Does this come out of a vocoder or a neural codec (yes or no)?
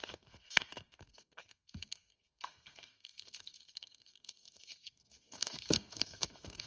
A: yes